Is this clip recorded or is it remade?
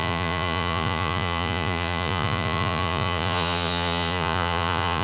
remade